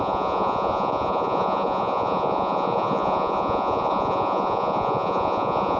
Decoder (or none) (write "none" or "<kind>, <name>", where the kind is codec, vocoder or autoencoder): vocoder, Vocos